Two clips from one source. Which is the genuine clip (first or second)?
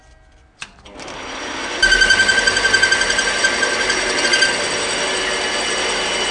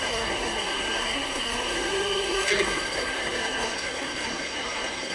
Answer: first